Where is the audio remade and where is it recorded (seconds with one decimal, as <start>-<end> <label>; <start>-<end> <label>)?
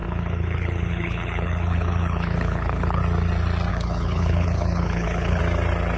0.0-3.0 remade; 3.0-3.7 recorded; 3.7-5.4 remade; 5.4-6.0 recorded